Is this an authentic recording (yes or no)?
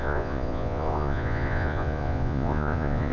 no